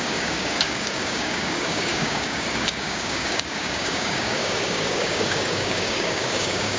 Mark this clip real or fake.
fake